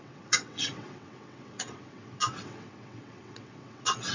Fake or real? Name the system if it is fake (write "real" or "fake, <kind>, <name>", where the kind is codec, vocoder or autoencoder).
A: fake, vocoder, WaveNeXt